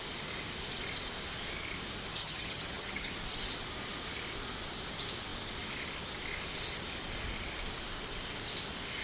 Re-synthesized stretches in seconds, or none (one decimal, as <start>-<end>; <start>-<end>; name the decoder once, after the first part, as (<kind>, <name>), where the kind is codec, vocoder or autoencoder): 2.2-3.1 (vocoder, HiFi-GAN)